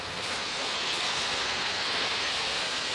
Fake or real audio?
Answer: fake